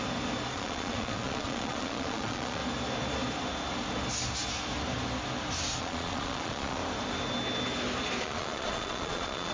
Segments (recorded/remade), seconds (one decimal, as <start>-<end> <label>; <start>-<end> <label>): 0.0-0.5 recorded; 0.5-2.6 remade; 2.6-5.8 recorded; 5.8-6.8 remade; 6.8-8.2 recorded; 8.2-9.5 remade

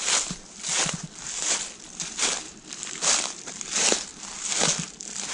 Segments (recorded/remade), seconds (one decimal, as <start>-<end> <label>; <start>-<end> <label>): 0.0-4.1 remade; 4.1-5.3 recorded

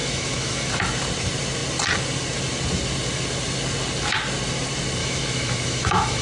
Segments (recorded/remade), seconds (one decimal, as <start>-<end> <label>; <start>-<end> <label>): 0.0-0.7 remade; 0.7-5.0 recorded; 5.0-6.2 remade

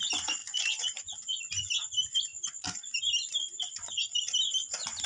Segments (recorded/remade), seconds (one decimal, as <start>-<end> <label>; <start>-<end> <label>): 0.0-0.4 recorded; 0.4-1.4 remade; 1.4-3.5 recorded; 3.5-4.0 remade; 4.0-5.1 recorded

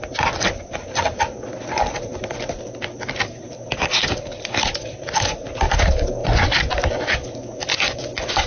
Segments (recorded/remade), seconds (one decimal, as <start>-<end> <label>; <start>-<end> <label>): 0.0-6.2 recorded; 6.2-6.7 remade; 6.7-7.7 recorded; 7.7-8.5 remade

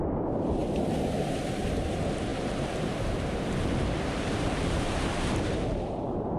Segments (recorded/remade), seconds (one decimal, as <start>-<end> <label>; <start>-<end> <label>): 0.0-0.6 recorded; 0.6-1.8 remade; 1.8-2.3 recorded; 2.3-6.4 remade